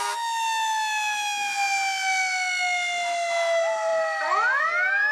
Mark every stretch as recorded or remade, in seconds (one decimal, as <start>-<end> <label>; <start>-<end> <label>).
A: 0.0-5.1 recorded